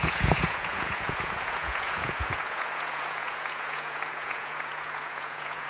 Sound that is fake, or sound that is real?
fake